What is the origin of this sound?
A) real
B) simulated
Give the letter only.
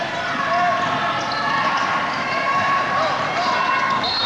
A